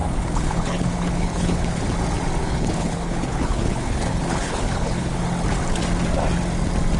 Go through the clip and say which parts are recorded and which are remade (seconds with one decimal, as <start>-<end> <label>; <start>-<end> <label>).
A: 0.0-1.8 remade; 1.8-2.4 recorded; 2.4-5.2 remade; 5.2-7.0 recorded